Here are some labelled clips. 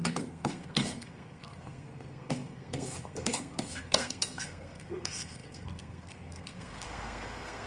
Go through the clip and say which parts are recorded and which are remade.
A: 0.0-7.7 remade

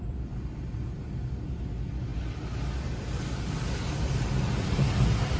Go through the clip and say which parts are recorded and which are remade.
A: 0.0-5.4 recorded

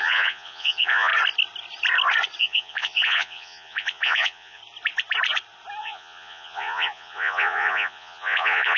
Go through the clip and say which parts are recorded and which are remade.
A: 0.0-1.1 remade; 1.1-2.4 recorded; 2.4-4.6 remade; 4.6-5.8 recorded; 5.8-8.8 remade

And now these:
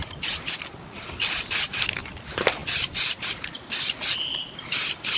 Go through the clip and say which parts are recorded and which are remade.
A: 0.0-1.7 recorded; 1.7-5.2 remade

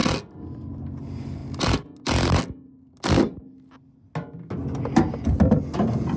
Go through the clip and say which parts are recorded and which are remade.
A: 0.0-6.2 recorded